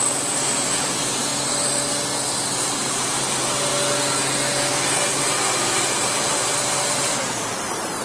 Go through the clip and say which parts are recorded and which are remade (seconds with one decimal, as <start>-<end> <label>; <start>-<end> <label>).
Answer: 0.0-1.3 remade; 1.3-2.7 recorded; 2.7-3.7 remade; 3.7-6.5 recorded; 6.5-8.0 remade